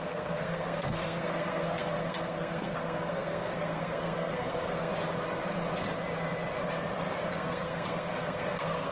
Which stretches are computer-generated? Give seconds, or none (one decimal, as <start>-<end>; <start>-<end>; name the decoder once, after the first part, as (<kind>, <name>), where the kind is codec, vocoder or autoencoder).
0.0-4.9 (codec, SNAC); 7.3-8.9